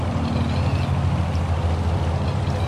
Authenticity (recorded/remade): recorded